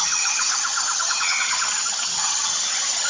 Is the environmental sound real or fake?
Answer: fake